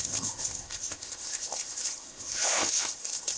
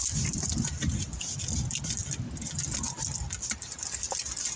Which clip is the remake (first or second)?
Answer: first